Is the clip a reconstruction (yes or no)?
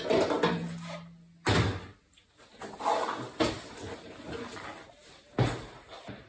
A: no